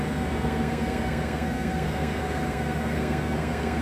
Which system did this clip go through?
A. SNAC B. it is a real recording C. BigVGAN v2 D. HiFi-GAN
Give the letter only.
A